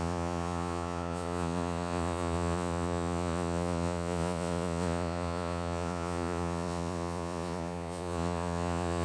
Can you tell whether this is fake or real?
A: fake